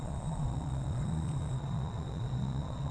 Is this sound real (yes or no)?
no